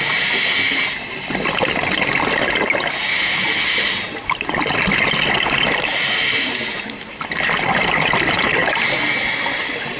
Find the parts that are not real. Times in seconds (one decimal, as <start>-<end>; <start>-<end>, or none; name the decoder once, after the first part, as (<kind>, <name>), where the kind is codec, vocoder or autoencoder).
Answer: none